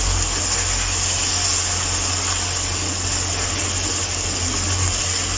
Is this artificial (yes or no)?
no